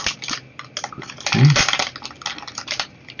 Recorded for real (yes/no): yes